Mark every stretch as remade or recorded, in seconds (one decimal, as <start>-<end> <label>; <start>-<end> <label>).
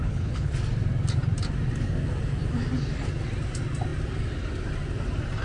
0.0-0.5 remade; 0.5-5.4 recorded